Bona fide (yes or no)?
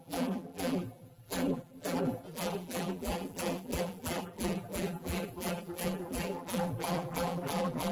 no